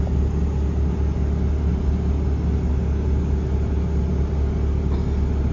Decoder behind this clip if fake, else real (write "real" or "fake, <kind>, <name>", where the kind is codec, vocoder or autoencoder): real